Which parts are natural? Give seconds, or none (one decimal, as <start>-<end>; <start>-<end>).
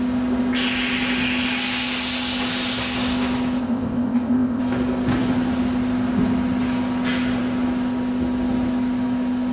0.0-3.6; 4.6-9.5